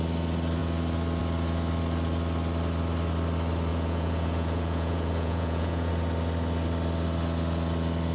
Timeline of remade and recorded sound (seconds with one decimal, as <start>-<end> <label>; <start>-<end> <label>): 0.0-3.7 recorded; 3.7-5.9 remade; 5.9-8.1 recorded